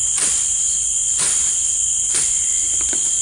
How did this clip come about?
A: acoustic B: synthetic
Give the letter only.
A